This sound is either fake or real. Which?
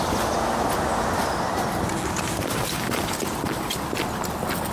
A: real